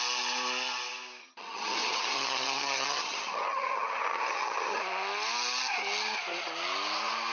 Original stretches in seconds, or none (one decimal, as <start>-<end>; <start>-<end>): 0.0-1.2; 4.8-7.3